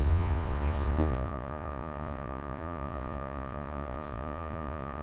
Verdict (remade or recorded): remade